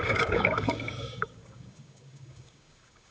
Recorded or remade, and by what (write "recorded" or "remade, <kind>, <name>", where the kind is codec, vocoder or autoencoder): remade, codec, DAC